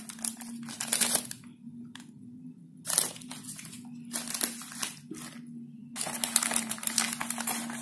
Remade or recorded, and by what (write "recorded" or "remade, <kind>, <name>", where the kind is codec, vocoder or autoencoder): recorded